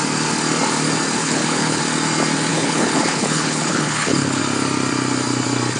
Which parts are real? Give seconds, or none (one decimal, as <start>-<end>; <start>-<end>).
0.0-1.2; 1.8-2.5; 4.4-5.8